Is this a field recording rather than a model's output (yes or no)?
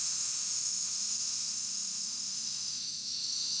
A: no